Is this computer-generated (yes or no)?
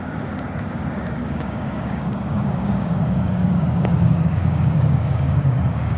yes